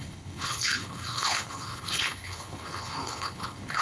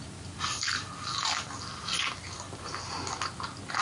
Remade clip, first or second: first